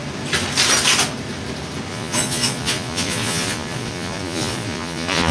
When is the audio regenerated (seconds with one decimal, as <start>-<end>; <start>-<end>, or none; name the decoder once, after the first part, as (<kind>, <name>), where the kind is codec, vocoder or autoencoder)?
1.9-5.3 (vocoder, Vocos)

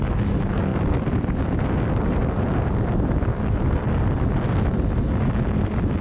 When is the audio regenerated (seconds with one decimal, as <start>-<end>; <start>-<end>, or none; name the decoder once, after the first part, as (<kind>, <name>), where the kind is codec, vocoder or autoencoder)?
none

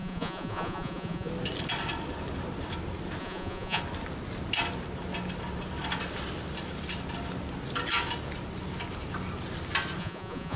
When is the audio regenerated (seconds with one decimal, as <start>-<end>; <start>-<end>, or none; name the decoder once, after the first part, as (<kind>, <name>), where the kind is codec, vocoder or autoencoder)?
0.0-1.3 (vocoder, Vocos); 3.2-3.8; 10.0-10.6

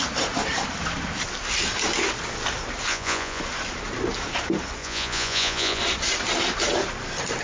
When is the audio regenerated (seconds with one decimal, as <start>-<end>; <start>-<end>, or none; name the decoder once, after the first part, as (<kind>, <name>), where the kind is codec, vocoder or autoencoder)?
2.9-3.4 (vocoder, Vocos); 4.8-5.8

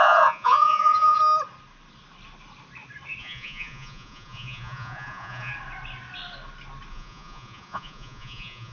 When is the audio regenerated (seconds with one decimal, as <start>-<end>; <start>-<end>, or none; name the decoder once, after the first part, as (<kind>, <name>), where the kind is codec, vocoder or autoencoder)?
0.0-1.2 (vocoder, Vocos); 3.2-5.5; 6.9-8.7

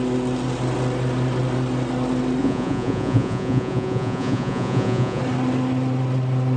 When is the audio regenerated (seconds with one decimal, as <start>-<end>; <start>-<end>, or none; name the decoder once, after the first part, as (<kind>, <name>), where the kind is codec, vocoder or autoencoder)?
2.4-5.2 (vocoder, Vocos)

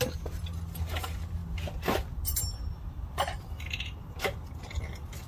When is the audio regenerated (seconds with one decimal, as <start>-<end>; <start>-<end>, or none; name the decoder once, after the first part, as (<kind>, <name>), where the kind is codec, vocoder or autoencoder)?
none